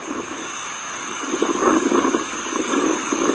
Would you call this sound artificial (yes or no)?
yes